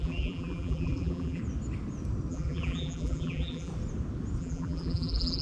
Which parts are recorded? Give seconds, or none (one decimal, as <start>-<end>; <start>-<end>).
1.4-2.3; 3.7-4.4